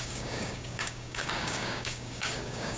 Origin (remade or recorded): remade